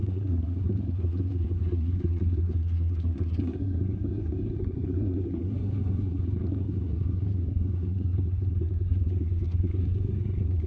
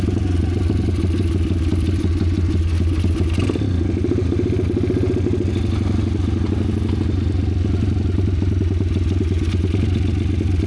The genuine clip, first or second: second